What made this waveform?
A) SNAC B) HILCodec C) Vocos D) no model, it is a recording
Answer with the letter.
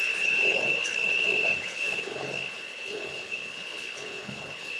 B